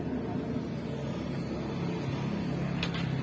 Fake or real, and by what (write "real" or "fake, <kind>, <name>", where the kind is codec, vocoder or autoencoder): real